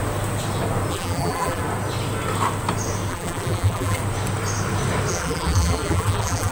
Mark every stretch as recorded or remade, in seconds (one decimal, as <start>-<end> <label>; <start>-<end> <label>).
0.0-0.9 recorded; 0.9-1.6 remade; 1.6-3.1 recorded; 3.1-4.0 remade; 4.0-5.1 recorded; 5.1-6.5 remade